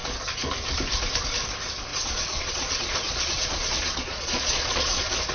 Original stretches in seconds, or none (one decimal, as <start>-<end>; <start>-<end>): 0.0-1.9

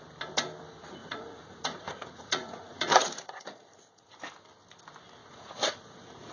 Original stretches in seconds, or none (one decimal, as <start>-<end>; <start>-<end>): 0.0-1.0; 4.1-5.2

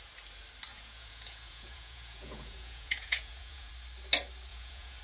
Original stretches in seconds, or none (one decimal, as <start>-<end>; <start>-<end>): 0.0-0.7; 3.7-4.5

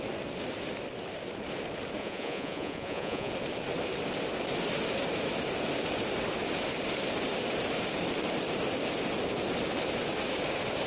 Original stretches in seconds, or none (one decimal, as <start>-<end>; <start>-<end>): 0.0-2.0; 3.3-10.9

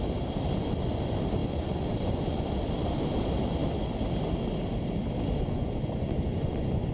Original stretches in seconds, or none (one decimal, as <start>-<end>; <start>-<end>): 0.0-1.4; 2.4-5.4